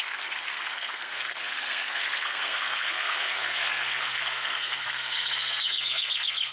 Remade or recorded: remade